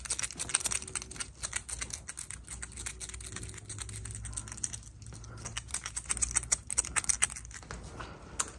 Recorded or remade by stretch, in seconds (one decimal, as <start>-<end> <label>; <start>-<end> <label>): 0.0-8.6 recorded